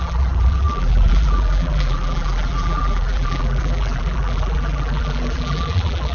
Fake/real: fake